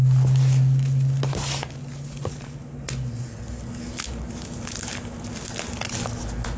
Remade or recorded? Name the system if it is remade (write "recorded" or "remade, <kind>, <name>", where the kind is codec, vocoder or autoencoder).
recorded